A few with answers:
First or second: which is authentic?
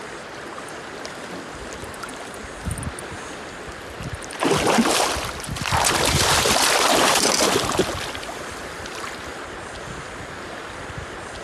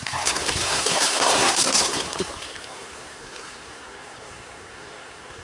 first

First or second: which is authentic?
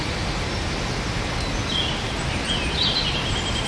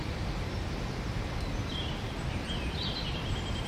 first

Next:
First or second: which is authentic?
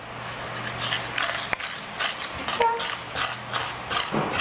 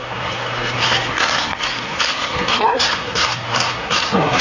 first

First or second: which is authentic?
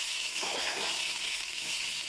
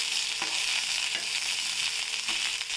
second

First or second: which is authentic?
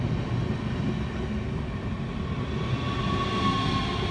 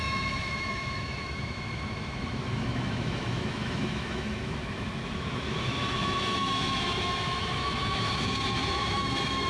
first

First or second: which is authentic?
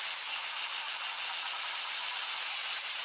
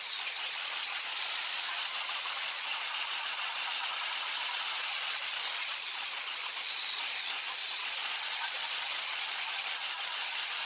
first